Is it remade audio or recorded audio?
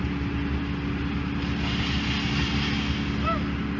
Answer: recorded